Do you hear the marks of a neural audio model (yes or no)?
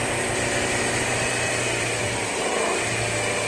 no